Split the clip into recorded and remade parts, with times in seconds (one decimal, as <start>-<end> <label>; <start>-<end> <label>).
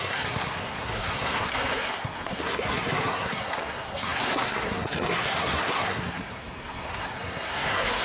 0.0-8.0 remade